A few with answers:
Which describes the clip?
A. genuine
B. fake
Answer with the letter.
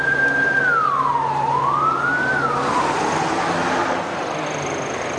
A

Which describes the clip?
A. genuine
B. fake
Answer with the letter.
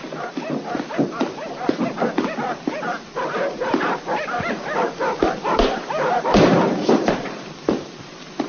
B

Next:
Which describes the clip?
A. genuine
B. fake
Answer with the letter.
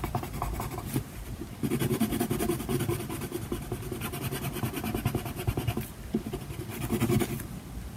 B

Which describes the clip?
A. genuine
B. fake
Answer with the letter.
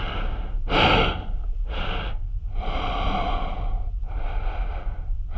A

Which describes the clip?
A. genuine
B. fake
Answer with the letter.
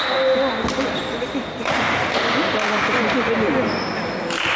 A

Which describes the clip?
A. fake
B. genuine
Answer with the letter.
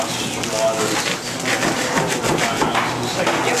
B